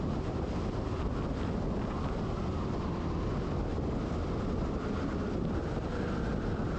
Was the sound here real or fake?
real